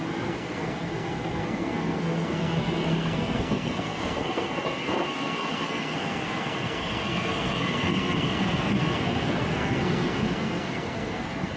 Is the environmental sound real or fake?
fake